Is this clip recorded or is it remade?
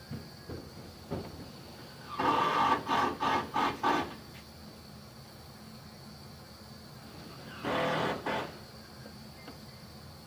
recorded